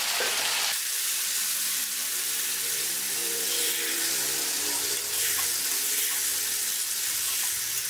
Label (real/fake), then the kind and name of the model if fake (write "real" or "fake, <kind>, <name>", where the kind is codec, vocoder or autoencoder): fake, vocoder, BigVGAN v2